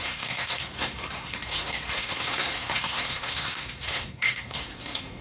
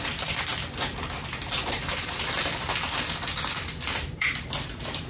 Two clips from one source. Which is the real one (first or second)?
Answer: second